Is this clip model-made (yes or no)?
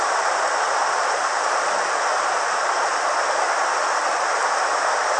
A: no